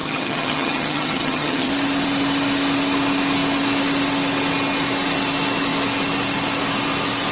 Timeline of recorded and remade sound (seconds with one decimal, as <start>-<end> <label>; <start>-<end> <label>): 0.0-1.7 remade; 1.7-7.3 recorded